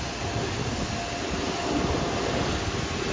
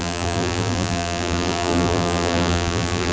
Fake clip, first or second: second